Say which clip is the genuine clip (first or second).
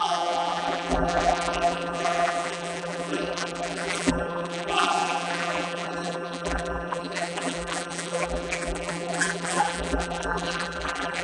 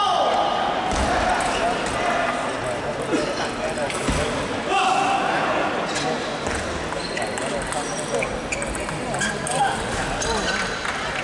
second